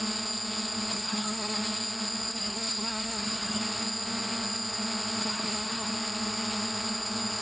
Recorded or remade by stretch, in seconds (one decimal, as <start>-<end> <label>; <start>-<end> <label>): 0.0-0.9 recorded; 0.9-1.6 remade; 1.6-2.3 recorded; 2.3-3.6 remade; 3.6-5.2 recorded; 5.2-5.9 remade; 5.9-7.4 recorded